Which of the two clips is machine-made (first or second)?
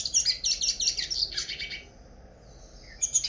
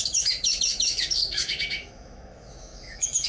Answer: second